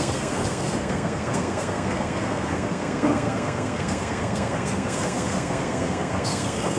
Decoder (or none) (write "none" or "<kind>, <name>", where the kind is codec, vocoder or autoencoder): codec, SNAC